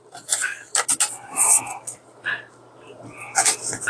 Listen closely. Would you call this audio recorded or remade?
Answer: recorded